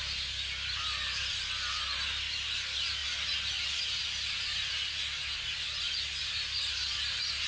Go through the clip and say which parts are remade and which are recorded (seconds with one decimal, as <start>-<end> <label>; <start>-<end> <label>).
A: 0.0-7.5 recorded